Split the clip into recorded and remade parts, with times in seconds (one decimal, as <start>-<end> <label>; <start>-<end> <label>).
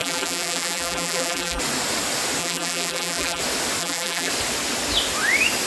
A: 0.0-1.6 remade; 1.6-2.4 recorded; 2.4-3.4 remade; 3.4-3.8 recorded; 3.8-4.3 remade; 4.3-5.7 recorded